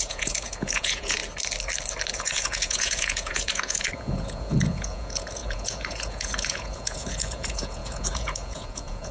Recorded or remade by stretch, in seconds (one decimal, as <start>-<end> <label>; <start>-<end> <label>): 0.0-1.2 remade; 1.2-2.1 recorded; 2.1-9.1 remade